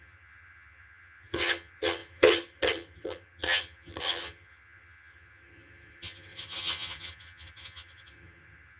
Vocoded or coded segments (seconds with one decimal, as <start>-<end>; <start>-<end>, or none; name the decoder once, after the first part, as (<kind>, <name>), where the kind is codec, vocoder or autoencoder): 0.0-8.8 (vocoder, HiFi-GAN)